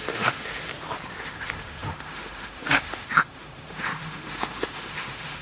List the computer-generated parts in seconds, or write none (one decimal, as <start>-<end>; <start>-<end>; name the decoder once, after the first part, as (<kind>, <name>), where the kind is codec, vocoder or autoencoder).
0.0-0.7 (autoencoder, DAC-VAE); 1.2-5.4